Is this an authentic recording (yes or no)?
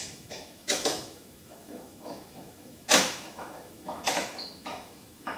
no